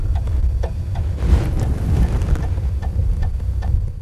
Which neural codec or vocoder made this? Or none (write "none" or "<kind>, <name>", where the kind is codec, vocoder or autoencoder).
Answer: vocoder, BigVGAN v2